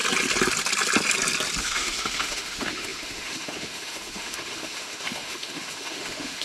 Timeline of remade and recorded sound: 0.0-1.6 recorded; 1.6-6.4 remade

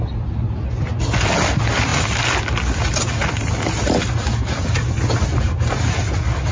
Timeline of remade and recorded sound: 0.0-6.5 recorded

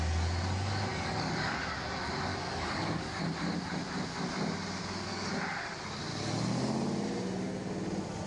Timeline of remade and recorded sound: 0.0-0.9 recorded; 0.9-1.6 remade; 1.6-2.3 recorded; 2.3-3.2 remade; 3.2-4.8 recorded; 4.8-5.3 remade; 5.3-8.3 recorded

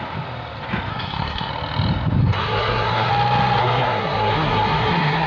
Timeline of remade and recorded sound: 0.0-0.9 recorded; 0.9-1.5 remade; 1.5-2.2 recorded; 2.2-3.1 remade; 3.1-3.6 recorded; 3.6-5.3 remade

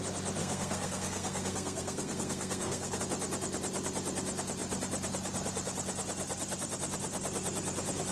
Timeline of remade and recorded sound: 0.0-0.4 recorded; 0.4-3.0 remade; 3.0-8.1 recorded

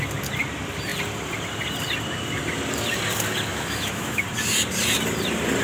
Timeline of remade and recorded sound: 0.0-3.5 recorded; 3.5-4.2 remade; 4.2-5.6 recorded

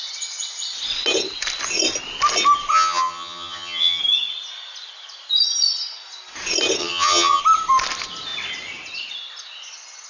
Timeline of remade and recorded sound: 0.0-2.7 recorded; 2.7-4.0 remade; 4.0-6.8 recorded; 6.8-7.4 remade; 7.4-10.1 recorded